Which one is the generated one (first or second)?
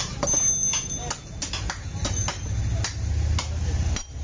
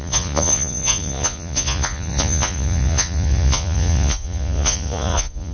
second